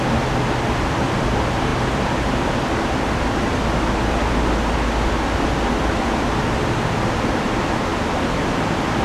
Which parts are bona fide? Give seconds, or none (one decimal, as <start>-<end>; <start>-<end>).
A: 0.0-9.0